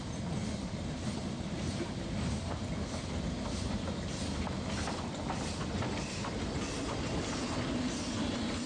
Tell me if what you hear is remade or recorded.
recorded